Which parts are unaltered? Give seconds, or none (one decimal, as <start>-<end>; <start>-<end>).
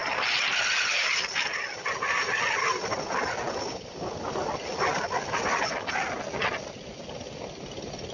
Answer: 0.0-8.1